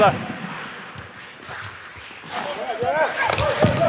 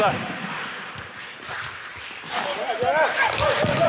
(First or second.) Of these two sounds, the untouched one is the first